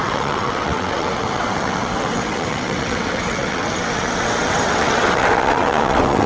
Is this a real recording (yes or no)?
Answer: no